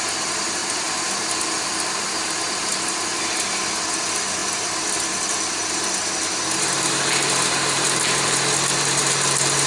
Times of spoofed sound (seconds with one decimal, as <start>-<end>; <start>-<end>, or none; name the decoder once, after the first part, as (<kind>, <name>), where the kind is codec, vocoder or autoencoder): none